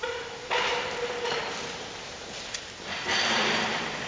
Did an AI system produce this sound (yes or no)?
no